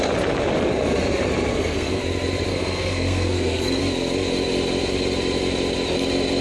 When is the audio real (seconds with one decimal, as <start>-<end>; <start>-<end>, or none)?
0.0-1.5; 2.0-2.5; 3.8-6.4